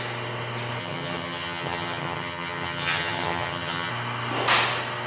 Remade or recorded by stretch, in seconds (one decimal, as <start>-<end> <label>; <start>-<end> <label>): 0.0-0.8 recorded; 0.8-3.9 remade; 3.9-5.1 recorded